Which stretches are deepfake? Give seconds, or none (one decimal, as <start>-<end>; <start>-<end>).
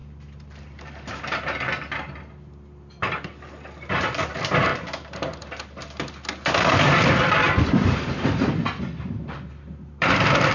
0.0-1.7; 3.0-3.9; 4.7-5.8; 7.4-10.5